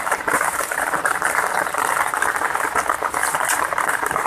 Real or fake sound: fake